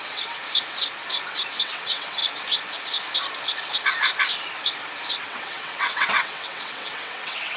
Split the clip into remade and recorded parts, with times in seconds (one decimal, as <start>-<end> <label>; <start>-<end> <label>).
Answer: 0.0-0.4 remade; 0.4-1.6 recorded; 1.6-2.2 remade; 2.2-5.2 recorded; 5.2-7.6 remade

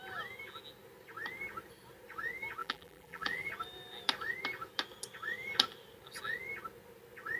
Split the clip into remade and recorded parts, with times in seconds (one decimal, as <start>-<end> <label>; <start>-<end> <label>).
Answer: 0.0-2.6 recorded; 2.6-3.5 remade; 3.5-7.4 recorded